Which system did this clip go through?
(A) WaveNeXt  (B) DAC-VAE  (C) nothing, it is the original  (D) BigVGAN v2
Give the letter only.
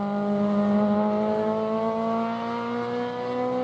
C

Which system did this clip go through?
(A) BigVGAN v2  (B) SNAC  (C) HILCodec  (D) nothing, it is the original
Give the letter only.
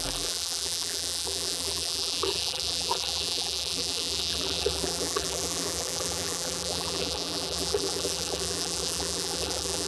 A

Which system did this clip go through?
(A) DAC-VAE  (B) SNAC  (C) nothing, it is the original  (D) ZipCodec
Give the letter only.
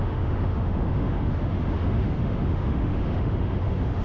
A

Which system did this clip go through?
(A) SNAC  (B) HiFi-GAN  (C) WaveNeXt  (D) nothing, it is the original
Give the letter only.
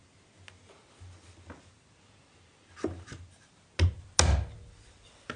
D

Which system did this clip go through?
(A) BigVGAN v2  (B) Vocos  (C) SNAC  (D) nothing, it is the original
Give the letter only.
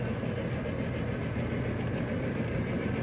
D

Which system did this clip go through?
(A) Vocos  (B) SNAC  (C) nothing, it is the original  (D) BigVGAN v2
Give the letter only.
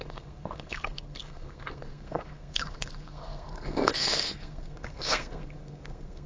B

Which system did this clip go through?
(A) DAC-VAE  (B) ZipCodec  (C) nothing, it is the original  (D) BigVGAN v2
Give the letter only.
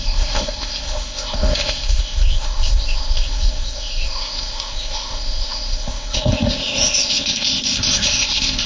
B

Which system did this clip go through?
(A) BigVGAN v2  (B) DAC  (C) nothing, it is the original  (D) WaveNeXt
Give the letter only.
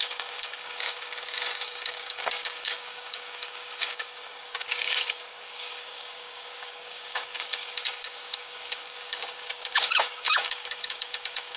B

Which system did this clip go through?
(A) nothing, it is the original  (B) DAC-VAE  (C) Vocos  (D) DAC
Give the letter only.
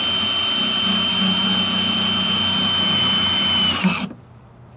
A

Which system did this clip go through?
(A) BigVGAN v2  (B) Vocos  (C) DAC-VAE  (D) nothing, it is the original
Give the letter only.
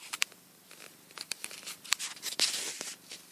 A